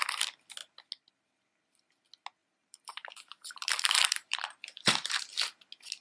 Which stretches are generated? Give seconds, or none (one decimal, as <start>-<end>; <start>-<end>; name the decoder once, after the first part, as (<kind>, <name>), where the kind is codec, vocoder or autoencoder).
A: 2.4-5.2 (vocoder, BigVGAN v2)